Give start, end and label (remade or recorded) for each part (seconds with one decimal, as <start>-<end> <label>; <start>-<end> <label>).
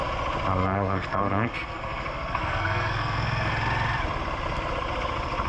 0.0-0.6 recorded; 0.6-3.5 remade; 3.5-5.5 recorded